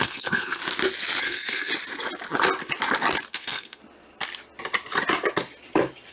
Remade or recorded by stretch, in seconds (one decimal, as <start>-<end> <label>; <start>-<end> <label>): 0.0-0.6 remade; 0.6-1.2 recorded; 1.2-1.7 remade; 1.7-3.3 recorded; 3.3-3.8 remade; 3.8-6.1 recorded